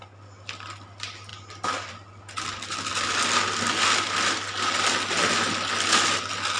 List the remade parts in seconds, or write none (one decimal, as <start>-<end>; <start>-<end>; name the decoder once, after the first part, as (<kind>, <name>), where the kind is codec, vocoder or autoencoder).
none